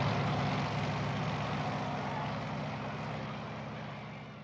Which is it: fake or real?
real